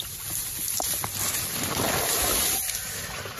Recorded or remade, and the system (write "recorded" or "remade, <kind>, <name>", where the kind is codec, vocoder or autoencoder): recorded